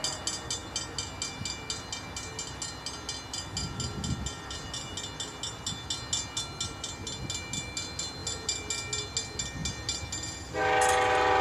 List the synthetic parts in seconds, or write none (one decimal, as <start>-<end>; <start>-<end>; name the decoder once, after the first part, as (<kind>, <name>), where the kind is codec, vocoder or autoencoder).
none